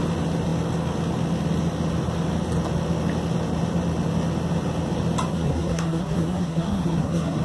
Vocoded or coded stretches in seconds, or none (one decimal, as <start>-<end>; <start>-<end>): 5.3-7.4